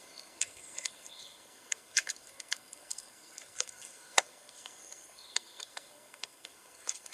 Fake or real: fake